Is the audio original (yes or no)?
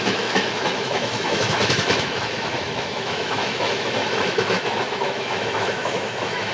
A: no